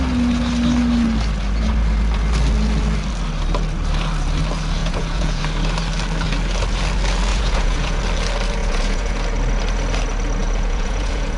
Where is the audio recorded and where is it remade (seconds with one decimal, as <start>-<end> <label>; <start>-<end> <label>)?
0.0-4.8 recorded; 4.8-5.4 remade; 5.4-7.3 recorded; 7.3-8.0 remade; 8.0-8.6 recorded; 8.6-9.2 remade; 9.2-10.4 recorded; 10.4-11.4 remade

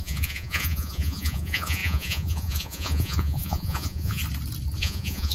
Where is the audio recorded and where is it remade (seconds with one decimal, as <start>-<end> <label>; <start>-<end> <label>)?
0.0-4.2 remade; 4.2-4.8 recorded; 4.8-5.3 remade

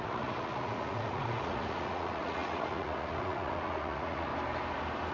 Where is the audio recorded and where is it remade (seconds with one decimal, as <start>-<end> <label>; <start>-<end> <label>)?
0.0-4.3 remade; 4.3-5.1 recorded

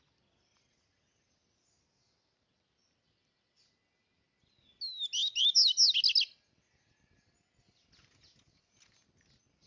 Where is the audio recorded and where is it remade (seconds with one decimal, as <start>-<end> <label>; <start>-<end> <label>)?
0.0-9.7 recorded

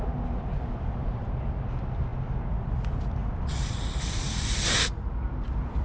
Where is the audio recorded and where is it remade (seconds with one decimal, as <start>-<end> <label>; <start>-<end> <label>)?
0.0-5.8 recorded

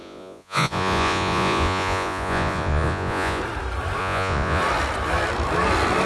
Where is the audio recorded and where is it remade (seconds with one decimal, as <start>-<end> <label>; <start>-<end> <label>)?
0.0-3.4 remade; 3.4-4.0 recorded; 4.0-4.6 remade; 4.6-6.1 recorded

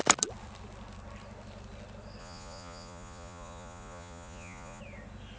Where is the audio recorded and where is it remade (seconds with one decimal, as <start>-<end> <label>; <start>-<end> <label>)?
0.0-2.2 recorded; 2.2-4.8 remade; 4.8-5.4 recorded